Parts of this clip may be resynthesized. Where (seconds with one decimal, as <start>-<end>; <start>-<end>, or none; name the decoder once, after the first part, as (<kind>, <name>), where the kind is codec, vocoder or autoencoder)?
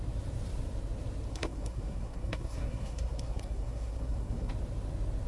1.3-4.5 (codec, SNAC)